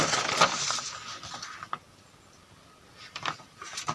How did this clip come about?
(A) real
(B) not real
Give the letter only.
A